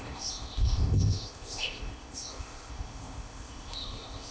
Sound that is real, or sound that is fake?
fake